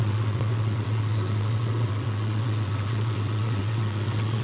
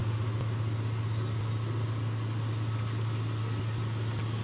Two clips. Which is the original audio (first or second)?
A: second